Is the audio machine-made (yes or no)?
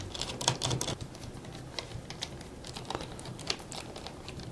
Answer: no